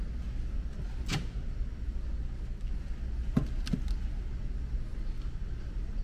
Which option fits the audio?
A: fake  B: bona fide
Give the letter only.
B